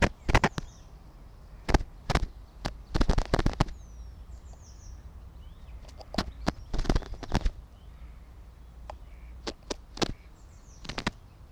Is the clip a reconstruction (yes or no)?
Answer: no